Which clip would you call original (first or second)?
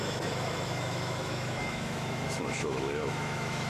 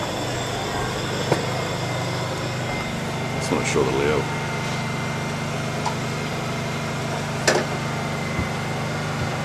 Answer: second